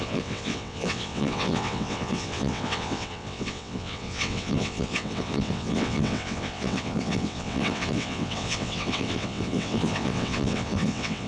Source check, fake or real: fake